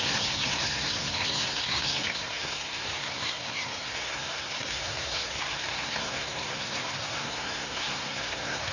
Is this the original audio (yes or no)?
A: no